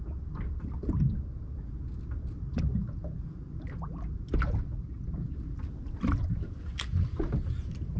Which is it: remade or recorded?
recorded